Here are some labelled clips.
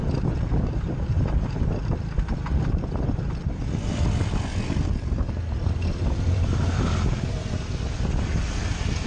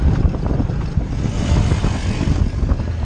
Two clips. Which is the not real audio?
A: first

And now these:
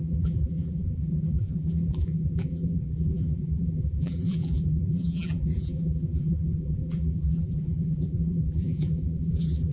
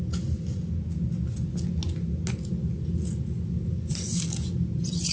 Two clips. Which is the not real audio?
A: first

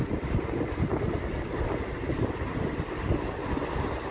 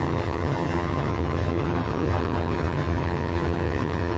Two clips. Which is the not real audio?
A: second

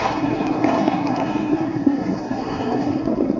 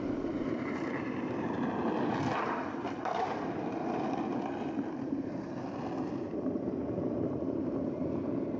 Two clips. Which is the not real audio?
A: first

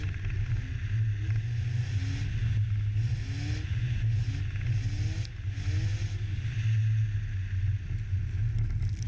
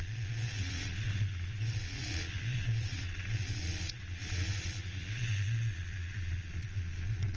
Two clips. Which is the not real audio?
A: second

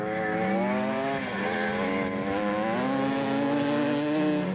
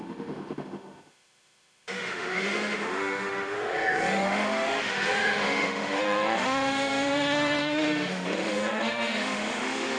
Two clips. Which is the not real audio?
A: second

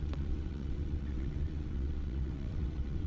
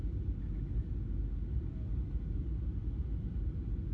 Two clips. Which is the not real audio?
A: first